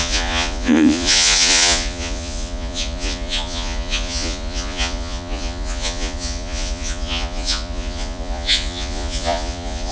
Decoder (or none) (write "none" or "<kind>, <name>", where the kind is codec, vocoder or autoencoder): vocoder, Vocos